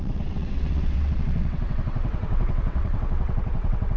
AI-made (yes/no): yes